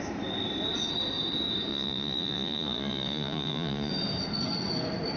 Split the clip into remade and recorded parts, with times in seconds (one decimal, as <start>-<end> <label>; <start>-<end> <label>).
0.0-1.7 recorded; 1.7-3.9 remade; 3.9-5.2 recorded